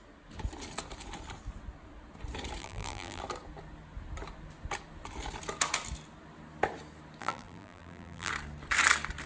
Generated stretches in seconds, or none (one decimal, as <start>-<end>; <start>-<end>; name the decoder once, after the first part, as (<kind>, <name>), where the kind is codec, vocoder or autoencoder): 2.6-3.2 (vocoder, BigVGAN v2); 7.2-8.3